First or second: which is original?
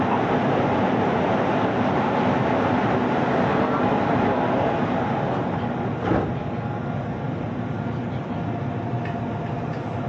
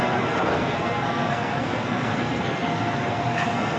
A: first